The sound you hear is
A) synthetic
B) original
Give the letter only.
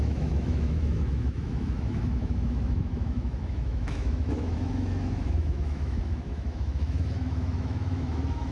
A